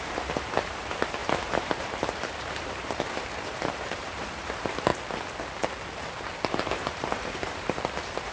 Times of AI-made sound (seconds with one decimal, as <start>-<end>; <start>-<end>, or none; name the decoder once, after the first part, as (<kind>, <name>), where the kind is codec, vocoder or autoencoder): 0.0-4.9 (vocoder, BigVGAN v2); 6.5-8.3